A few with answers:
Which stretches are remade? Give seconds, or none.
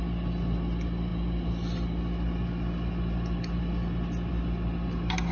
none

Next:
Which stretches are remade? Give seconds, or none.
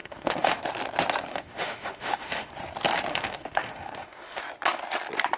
0.0-0.6; 1.3-2.5; 3.1-4.4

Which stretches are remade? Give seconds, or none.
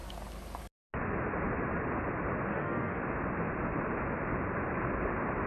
2.5-3.0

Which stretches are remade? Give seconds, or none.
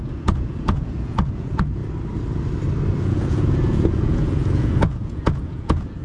0.0-1.8; 3.0-6.0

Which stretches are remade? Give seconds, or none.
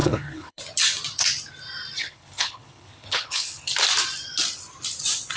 0.0-0.6; 2.0-3.7